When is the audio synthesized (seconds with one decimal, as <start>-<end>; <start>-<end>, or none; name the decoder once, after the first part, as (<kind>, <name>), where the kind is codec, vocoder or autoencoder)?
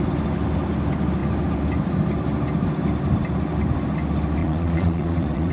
4.4-5.5 (vocoder, Vocos)